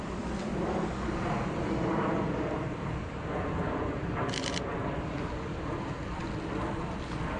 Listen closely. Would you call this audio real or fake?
real